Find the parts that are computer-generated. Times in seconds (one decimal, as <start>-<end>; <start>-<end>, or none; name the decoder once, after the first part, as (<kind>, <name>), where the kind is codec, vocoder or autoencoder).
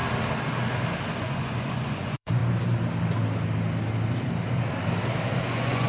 1.2-2.4 (vocoder, Vocos); 5.4-5.9